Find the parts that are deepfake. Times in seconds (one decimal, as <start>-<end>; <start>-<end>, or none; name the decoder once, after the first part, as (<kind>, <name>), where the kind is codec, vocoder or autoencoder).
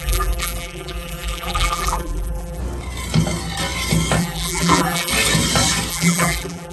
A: 0.0-2.6 (vocoder, BigVGAN v2); 4.2-5.1; 5.9-6.7